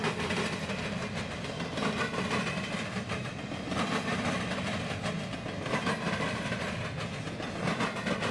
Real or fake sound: real